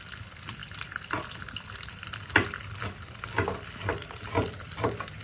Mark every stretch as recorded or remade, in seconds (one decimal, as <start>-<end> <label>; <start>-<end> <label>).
0.0-5.2 recorded